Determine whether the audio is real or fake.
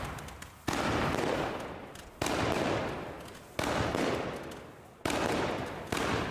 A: real